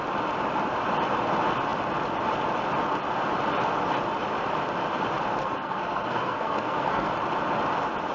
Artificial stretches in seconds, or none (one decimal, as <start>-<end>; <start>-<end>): 5.4-7.1